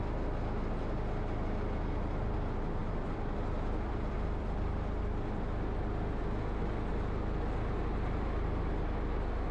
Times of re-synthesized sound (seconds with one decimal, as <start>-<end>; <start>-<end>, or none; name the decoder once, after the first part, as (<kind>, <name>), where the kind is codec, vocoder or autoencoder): 2.8-5.0 (vocoder, BigVGAN v2)